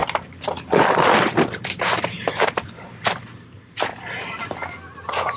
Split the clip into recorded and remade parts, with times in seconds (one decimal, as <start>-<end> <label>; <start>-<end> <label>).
0.0-3.2 remade; 3.2-5.4 recorded